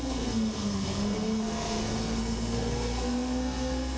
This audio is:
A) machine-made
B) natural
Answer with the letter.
A